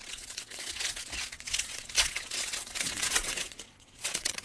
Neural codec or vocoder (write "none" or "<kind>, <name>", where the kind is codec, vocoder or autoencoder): vocoder, WaveNeXt